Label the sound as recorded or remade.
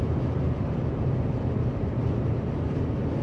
recorded